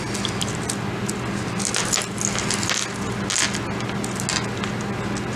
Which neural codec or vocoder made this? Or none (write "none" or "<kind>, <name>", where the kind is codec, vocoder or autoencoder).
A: none